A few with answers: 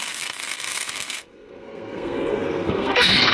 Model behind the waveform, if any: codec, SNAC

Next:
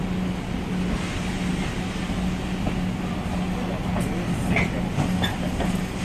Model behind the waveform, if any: none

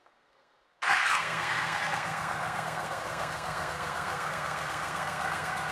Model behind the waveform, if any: codec, SNAC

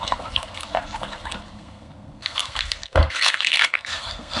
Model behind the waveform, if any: codec, SNAC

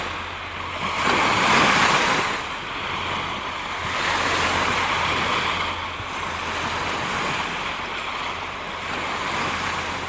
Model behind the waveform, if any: none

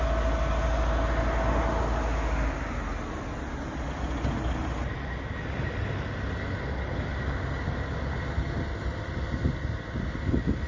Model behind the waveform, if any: none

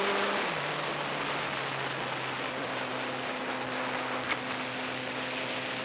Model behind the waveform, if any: none